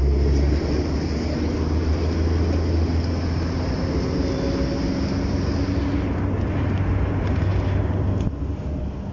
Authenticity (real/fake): real